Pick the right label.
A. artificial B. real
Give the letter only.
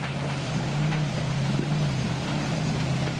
B